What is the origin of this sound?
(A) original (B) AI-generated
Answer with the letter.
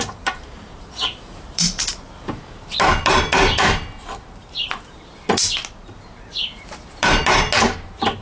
B